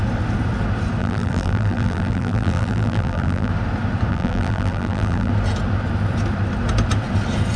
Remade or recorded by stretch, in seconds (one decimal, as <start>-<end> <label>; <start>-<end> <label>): 0.0-1.0 recorded; 1.0-3.5 remade; 3.5-4.1 recorded; 4.1-5.3 remade; 5.3-7.6 recorded

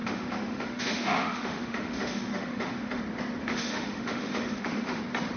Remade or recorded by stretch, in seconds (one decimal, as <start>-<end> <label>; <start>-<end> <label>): 0.0-3.0 remade; 3.0-3.4 recorded; 3.4-5.0 remade; 5.0-5.4 recorded

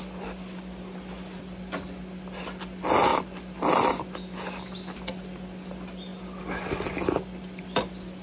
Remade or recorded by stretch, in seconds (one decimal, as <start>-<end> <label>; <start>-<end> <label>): 0.0-8.2 recorded

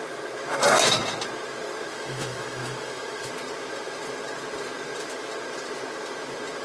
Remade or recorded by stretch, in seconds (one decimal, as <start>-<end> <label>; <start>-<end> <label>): 0.0-1.9 recorded; 1.9-3.3 remade; 3.3-6.6 recorded